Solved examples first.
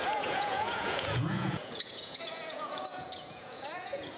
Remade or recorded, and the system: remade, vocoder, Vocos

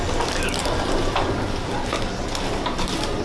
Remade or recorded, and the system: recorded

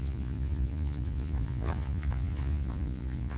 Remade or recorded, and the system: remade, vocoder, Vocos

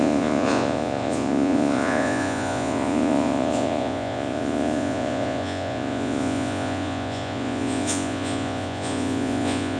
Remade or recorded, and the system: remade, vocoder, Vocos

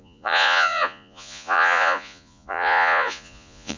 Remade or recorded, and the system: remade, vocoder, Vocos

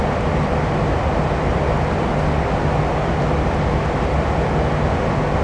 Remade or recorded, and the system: recorded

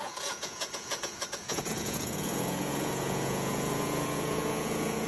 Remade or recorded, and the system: remade, vocoder, Vocos